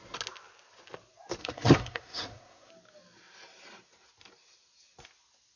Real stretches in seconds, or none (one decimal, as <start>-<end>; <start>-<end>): 0.0-1.4; 2.7-5.6